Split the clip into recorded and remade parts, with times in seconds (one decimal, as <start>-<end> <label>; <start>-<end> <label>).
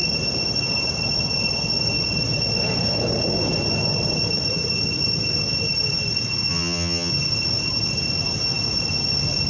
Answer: 0.0-6.5 recorded; 6.5-7.1 remade; 7.1-9.5 recorded